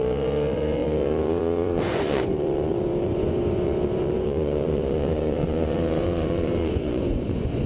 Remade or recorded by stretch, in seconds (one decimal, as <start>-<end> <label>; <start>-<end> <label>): 0.0-7.7 remade